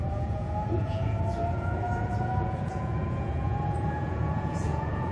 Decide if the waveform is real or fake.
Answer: fake